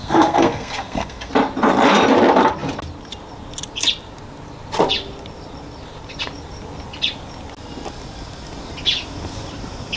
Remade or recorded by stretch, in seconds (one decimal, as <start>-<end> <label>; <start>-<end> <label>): 0.0-1.3 remade; 1.3-10.0 recorded